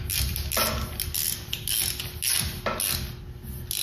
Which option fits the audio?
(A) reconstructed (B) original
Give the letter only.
B